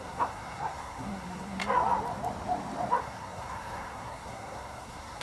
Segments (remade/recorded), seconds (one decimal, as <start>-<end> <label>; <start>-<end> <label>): 0.0-1.6 remade; 1.6-3.0 recorded; 3.0-5.2 remade